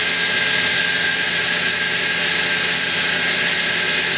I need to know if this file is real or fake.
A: real